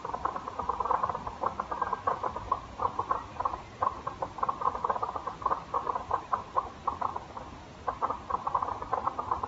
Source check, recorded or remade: recorded